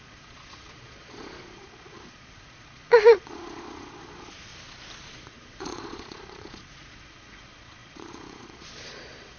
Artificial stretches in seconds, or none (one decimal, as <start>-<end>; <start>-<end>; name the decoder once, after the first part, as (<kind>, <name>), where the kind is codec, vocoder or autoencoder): 0.0-4.5 (vocoder, Vocos); 5.1-9.4